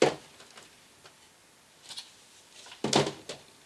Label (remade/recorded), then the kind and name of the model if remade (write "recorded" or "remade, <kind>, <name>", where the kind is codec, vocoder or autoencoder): recorded